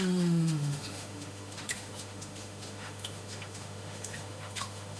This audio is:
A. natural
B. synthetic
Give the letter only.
B